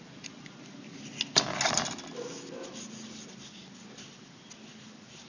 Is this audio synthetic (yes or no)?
no